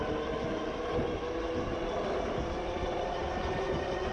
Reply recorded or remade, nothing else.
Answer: recorded